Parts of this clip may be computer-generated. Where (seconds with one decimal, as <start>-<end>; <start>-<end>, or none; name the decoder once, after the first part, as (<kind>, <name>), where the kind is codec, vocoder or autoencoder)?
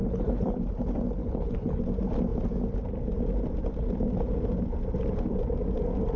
0.0-0.6 (codec, HILCodec); 1.2-1.8